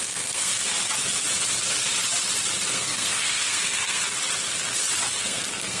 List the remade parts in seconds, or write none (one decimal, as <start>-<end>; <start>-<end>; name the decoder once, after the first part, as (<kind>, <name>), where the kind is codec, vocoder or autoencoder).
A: 0.0-0.5 (codec, SNAC); 2.7-4.0; 5.2-5.8